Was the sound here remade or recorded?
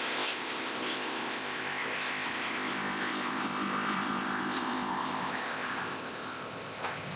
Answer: remade